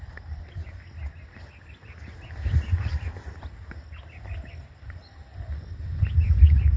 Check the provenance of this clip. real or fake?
real